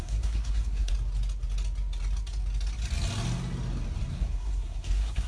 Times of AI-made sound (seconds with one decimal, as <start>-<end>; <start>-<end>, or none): 0.0-0.9; 4.1-5.3